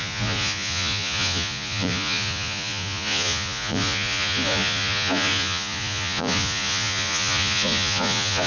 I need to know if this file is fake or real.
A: fake